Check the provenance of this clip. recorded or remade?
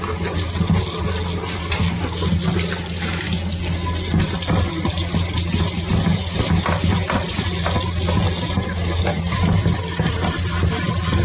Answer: recorded